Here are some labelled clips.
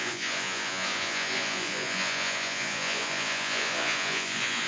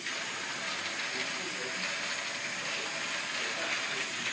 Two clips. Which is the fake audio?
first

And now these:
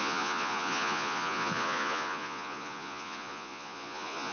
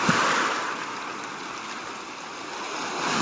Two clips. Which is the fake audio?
first